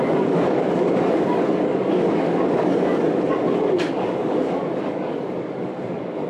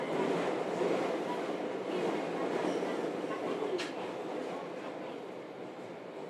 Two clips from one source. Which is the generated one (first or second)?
first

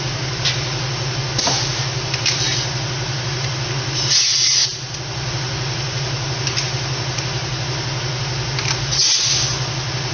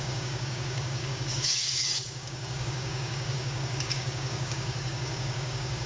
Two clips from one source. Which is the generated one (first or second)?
second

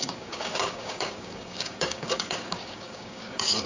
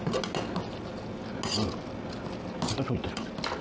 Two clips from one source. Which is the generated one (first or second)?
first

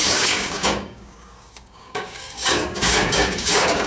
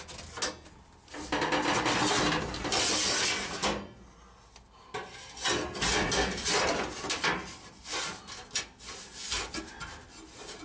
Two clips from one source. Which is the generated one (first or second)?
first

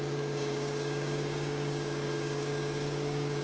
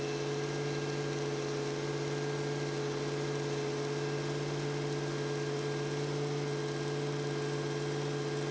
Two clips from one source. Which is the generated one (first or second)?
first